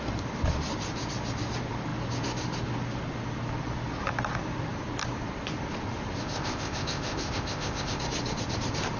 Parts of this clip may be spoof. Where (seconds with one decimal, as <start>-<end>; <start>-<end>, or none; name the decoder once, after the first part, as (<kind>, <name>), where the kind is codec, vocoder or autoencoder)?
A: 6.2-8.0 (codec, ZipCodec)